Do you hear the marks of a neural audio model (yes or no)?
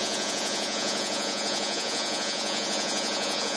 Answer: yes